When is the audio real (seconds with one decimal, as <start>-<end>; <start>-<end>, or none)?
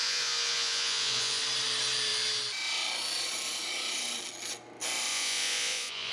1.4-5.1